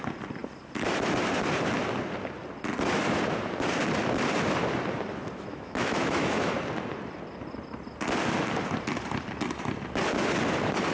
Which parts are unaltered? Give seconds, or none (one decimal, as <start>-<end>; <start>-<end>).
0.0-5.5; 6.5-10.9